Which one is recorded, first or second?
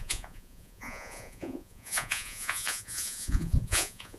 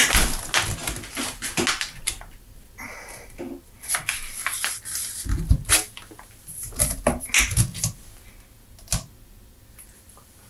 second